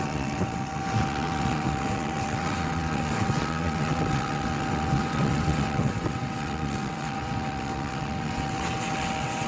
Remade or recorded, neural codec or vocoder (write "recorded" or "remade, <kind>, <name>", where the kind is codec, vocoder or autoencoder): remade, vocoder, WaveNeXt